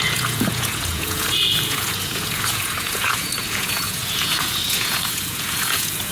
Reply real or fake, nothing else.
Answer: fake